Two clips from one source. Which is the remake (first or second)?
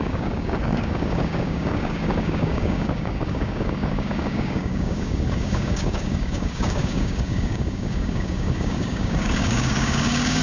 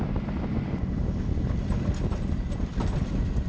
first